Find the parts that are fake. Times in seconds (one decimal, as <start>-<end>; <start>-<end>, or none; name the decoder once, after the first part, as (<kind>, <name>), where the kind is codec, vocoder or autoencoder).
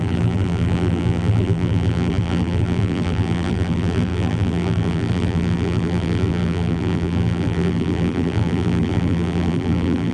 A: 0.0-10.1 (vocoder, BigVGAN v2)